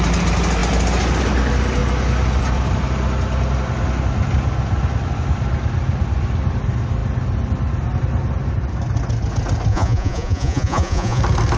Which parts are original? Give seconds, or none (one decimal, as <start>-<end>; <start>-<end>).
0.0-9.7; 11.2-11.6